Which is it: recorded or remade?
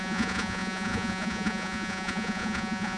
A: remade